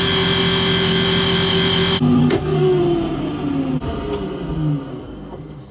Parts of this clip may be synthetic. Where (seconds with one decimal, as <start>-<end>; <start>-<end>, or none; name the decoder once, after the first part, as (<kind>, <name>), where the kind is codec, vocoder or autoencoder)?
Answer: 2.2-2.8 (codec, SNAC); 4.9-5.7